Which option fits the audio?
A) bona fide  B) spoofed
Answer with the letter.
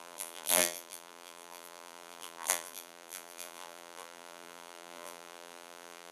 B